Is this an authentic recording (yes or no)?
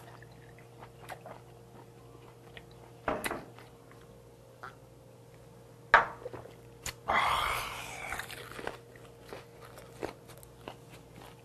yes